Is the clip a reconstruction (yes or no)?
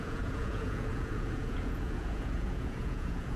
yes